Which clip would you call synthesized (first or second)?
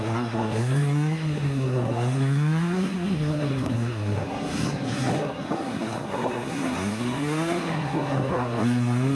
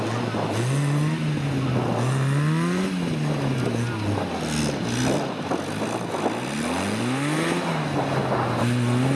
first